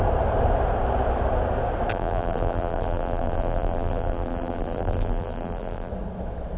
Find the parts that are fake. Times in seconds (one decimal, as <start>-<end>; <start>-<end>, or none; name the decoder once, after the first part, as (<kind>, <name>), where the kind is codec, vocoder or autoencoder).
1.9-5.9 (vocoder, BigVGAN v2)